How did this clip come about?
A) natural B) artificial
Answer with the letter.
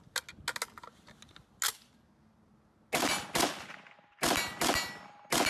A